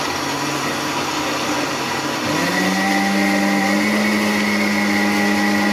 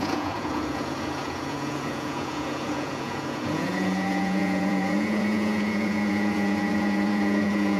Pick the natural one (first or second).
first